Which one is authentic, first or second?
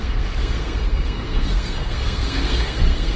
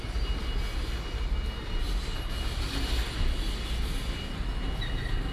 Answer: second